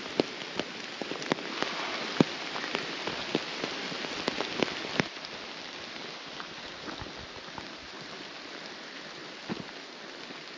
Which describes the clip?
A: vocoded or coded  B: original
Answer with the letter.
B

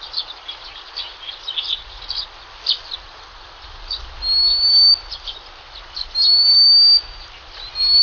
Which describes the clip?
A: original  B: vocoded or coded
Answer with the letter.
A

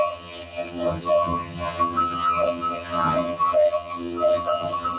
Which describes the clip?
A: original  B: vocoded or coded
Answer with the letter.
B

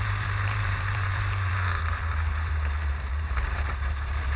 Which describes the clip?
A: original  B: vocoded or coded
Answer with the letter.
B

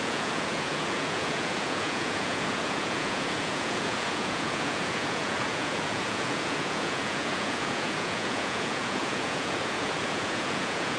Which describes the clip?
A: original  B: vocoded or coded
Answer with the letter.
B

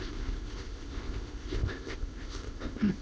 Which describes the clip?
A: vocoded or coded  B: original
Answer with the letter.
A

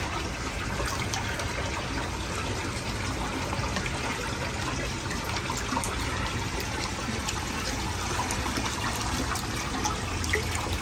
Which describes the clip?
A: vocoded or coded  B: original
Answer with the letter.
B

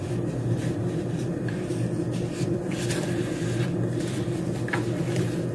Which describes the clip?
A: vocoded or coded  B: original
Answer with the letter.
A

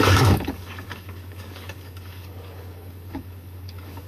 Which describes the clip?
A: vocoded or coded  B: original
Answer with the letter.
A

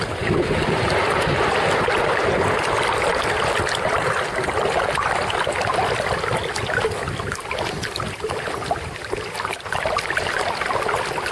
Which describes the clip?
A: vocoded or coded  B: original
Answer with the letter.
B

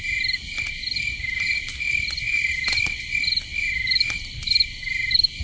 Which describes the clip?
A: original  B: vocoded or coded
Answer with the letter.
A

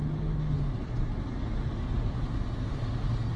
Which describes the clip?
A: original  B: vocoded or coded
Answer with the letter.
A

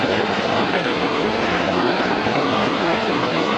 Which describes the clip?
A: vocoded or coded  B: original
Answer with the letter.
A